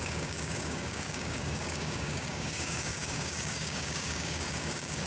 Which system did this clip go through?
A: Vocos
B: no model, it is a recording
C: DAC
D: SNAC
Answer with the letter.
C